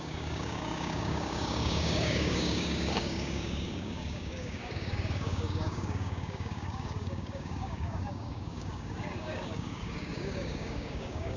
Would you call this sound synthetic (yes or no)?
yes